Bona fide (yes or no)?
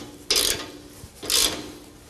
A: yes